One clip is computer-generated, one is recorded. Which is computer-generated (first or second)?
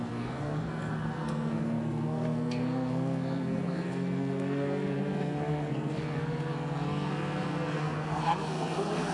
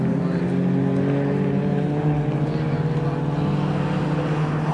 first